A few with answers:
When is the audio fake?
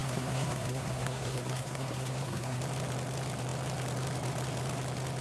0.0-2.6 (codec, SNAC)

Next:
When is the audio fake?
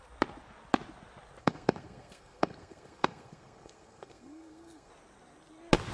1.4-4.9 (codec, SNAC)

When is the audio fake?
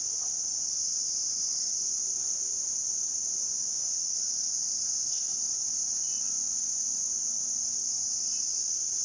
0.0-5.3 (vocoder, Vocos); 6.2-7.1; 8.2-9.0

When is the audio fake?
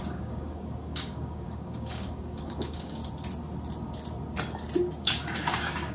0.0-3.0 (codec, DAC); 5.0-5.9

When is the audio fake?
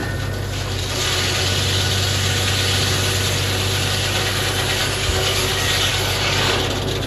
4.8-5.5 (codec, DAC); 5.9-6.6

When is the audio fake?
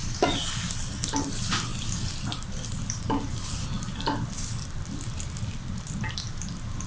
none